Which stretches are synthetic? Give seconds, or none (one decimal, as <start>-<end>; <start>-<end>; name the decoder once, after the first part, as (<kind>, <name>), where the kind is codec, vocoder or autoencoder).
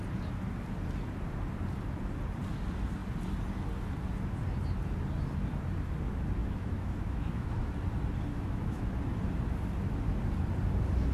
6.4-7.7 (autoencoder, DAC-VAE); 8.3-8.8